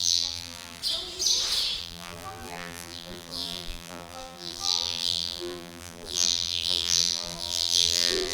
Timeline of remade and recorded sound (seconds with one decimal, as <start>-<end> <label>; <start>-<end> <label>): 0.0-0.8 remade; 0.8-1.8 recorded; 1.8-8.3 remade